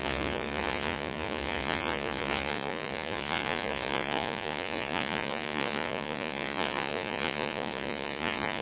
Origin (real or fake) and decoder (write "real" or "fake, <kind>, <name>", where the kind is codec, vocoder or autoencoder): fake, vocoder, Vocos